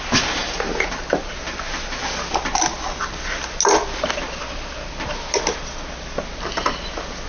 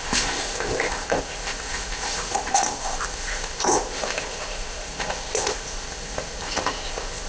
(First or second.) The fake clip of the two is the second